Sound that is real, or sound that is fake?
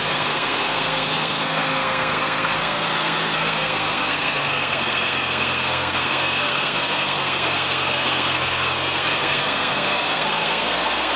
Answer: fake